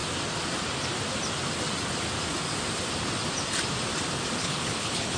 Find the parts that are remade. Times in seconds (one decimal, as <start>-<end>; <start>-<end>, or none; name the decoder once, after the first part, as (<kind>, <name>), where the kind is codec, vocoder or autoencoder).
4.4-5.2 (codec, HILCodec)